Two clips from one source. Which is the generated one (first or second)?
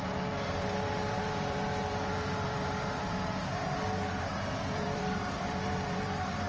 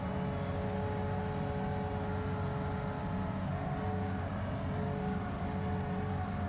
first